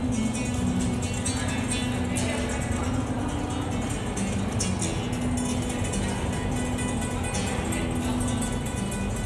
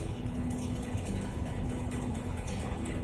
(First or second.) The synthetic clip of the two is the second